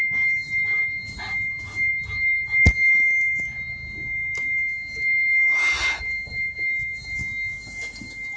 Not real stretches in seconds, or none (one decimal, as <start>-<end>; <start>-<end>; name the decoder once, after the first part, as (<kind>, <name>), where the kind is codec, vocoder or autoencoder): none